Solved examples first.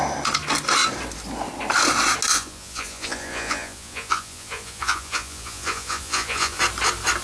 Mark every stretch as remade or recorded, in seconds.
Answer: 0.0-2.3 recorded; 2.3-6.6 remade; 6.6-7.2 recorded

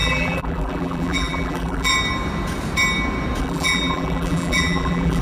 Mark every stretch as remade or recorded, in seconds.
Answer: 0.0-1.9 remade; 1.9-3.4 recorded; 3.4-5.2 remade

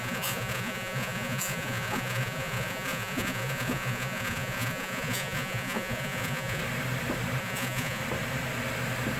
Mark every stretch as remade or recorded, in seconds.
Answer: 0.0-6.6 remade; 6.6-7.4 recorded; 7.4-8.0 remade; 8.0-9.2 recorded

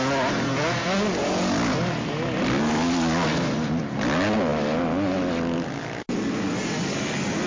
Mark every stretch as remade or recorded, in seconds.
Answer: 0.0-7.5 recorded

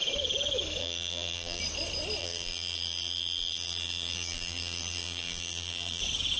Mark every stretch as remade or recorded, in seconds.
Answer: 0.0-0.8 recorded; 0.8-1.6 remade; 1.6-2.2 recorded; 2.2-6.0 remade; 6.0-6.4 recorded

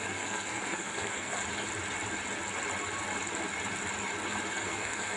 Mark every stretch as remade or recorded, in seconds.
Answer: 0.0-1.4 remade; 1.4-4.5 recorded; 4.5-5.2 remade

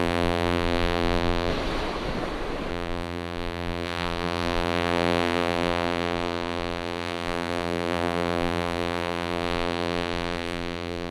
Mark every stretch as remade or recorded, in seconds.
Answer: 0.0-1.5 remade; 1.5-2.7 recorded; 2.7-11.1 remade

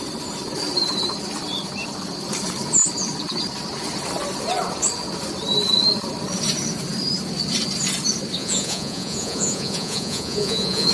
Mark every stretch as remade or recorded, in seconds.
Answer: 0.0-8.4 recorded; 8.4-10.9 remade